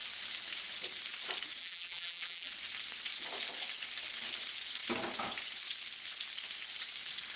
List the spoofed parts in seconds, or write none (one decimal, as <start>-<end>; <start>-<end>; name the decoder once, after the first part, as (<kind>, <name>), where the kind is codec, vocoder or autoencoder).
1.6-2.5 (vocoder, BigVGAN v2)